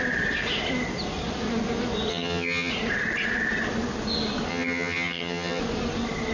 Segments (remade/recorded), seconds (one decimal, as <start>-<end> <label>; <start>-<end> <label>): 0.0-2.1 recorded; 2.1-2.7 remade; 2.7-4.5 recorded; 4.5-5.6 remade; 5.6-6.3 recorded